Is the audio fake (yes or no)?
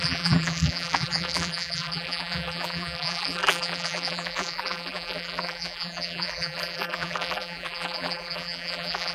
yes